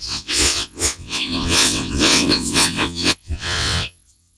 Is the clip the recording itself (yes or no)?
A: no